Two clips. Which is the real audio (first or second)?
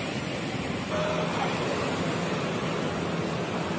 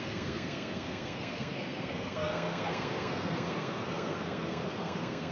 first